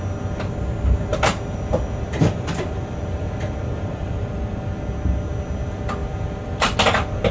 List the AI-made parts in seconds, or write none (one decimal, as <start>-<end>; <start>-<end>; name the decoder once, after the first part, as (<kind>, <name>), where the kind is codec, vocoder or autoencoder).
1.1-4.4 (vocoder, BigVGAN v2); 6.0-6.6